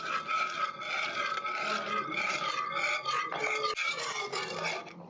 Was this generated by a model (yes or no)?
no